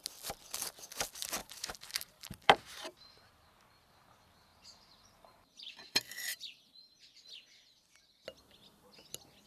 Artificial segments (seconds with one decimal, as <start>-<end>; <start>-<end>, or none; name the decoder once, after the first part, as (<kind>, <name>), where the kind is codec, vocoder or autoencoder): 1.4-3.3 (vocoder, BigVGAN v2); 4.5-6.6